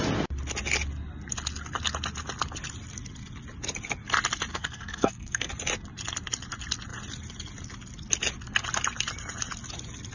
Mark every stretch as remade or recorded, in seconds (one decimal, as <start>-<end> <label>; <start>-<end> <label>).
0.0-4.5 recorded; 4.5-5.5 remade; 5.5-10.1 recorded